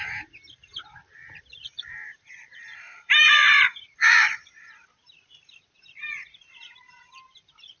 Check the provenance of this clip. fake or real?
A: fake